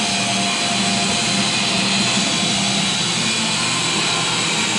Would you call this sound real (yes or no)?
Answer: yes